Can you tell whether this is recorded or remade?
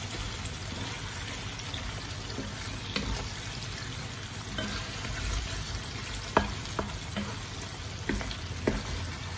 recorded